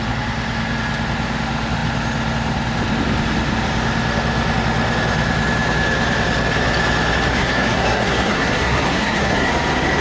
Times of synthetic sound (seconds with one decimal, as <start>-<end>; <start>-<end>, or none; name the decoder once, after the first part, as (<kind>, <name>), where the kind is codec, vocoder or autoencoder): 7.3-9.5 (codec, SNAC)